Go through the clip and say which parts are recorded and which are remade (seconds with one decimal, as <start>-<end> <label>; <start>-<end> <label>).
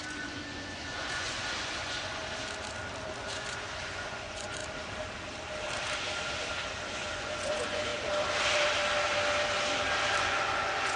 0.0-2.2 remade; 2.2-3.2 recorded; 3.2-4.6 remade; 4.6-6.9 recorded; 6.9-7.9 remade; 7.9-10.2 recorded; 10.2-11.0 remade